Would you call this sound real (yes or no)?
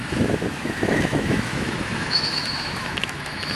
no